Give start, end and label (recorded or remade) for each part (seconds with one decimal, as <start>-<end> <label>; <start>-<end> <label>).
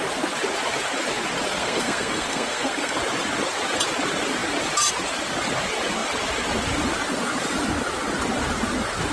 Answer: 0.0-1.6 recorded; 1.6-3.0 remade; 3.0-9.1 recorded